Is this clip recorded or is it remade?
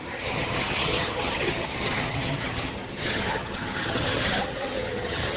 remade